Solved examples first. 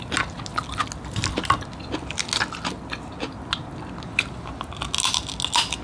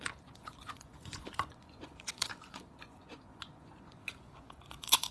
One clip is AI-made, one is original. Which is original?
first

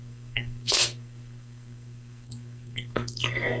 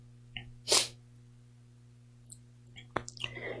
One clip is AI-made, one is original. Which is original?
second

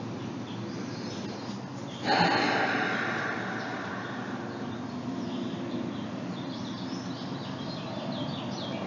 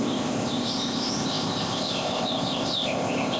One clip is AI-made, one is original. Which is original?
first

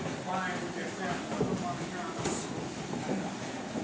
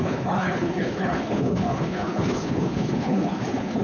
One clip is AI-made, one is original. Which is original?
first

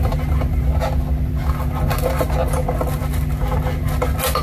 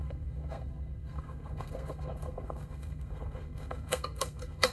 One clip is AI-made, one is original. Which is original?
first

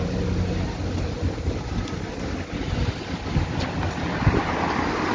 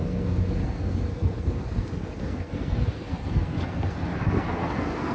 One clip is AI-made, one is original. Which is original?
first